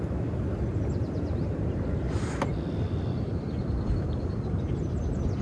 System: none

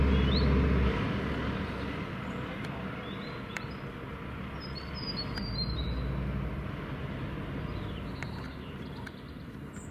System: none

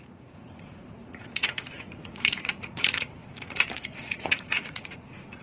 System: vocoder, Vocos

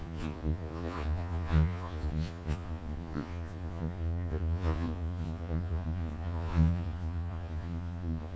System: vocoder, Vocos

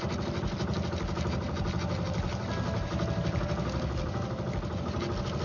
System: none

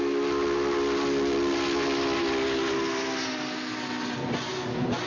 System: none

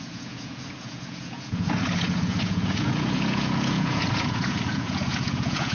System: vocoder, Vocos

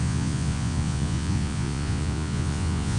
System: vocoder, Vocos